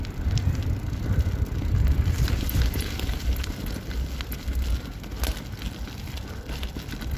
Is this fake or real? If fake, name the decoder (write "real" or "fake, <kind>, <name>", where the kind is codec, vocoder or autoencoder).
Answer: real